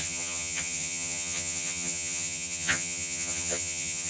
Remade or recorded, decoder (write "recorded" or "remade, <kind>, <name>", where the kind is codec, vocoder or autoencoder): remade, vocoder, HiFi-GAN